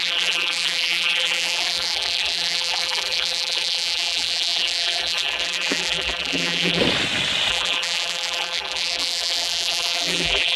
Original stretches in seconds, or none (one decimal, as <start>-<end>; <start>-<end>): 6.8-7.5